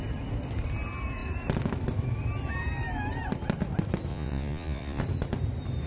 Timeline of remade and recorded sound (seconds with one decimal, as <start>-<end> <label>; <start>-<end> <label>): 0.0-4.1 recorded; 4.1-5.0 remade; 5.0-5.9 recorded